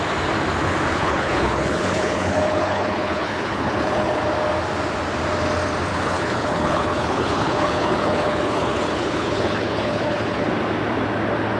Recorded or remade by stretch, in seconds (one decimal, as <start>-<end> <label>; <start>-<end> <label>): 0.0-0.9 recorded; 0.9-4.2 remade; 4.2-5.9 recorded; 5.9-10.5 remade; 10.5-11.6 recorded